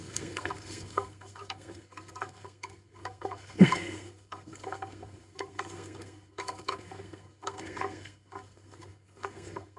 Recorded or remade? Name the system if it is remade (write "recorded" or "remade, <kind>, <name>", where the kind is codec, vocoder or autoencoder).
remade, codec, SNAC